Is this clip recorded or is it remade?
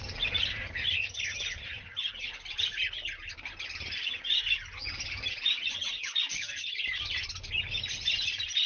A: remade